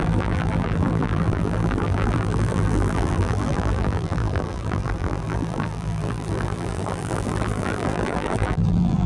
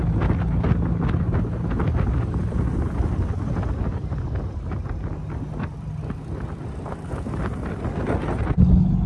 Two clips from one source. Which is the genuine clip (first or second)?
second